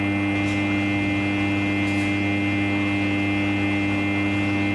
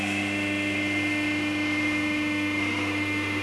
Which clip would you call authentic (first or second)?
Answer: first